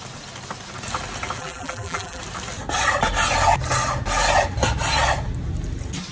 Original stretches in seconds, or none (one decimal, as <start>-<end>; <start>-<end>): 0.0-1.4; 2.2-6.1